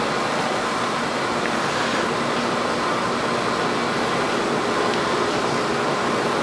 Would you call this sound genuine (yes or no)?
yes